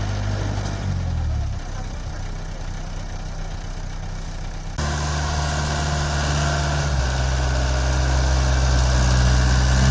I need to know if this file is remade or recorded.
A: recorded